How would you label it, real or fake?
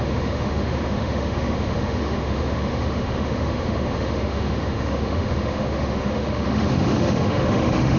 fake